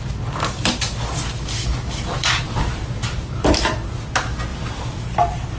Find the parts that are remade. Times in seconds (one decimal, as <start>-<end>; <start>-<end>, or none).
1.7-3.5; 4.5-5.6

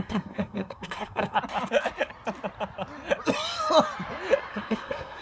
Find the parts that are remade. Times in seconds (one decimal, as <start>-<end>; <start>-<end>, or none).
0.0-1.4; 4.5-5.2